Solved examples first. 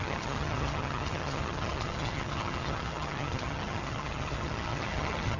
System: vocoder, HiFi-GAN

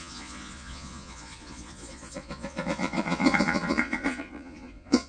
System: vocoder, Vocos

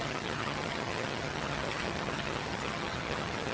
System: vocoder, HiFi-GAN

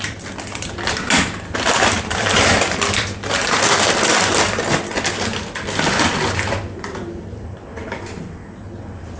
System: vocoder, BigVGAN v2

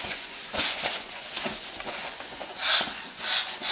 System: vocoder, Vocos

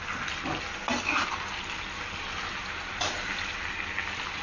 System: none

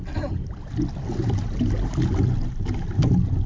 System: none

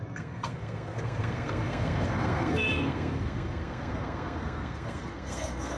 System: codec, SNAC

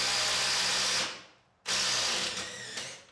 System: none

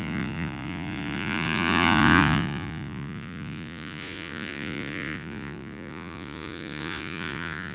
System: vocoder, Vocos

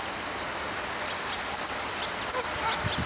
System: none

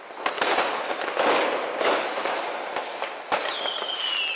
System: none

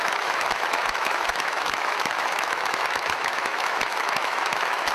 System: autoencoder, DAC-VAE